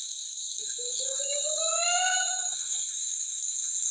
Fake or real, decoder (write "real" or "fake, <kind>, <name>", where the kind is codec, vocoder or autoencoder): fake, autoencoder, DAC-VAE